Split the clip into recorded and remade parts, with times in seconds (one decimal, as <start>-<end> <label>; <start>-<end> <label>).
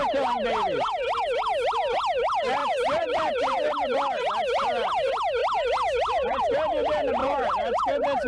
0.0-2.6 recorded; 2.6-3.7 remade; 3.7-7.2 recorded; 7.2-8.3 remade